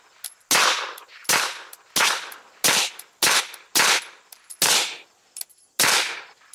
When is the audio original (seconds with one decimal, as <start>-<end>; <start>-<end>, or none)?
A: 0.0-6.5